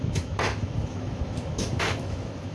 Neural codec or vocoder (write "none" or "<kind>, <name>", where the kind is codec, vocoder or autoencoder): autoencoder, DAC-VAE